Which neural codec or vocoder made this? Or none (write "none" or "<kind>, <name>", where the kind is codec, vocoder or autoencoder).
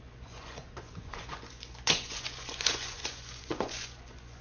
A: vocoder, Vocos